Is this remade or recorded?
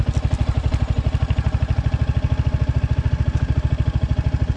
recorded